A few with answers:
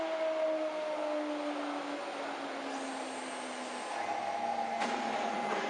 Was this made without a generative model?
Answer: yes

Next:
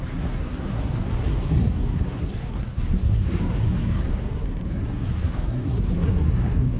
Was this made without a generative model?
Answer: no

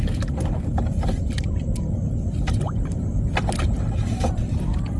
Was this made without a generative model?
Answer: yes